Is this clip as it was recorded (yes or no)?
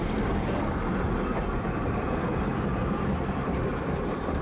yes